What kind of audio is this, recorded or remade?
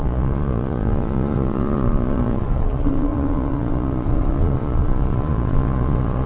remade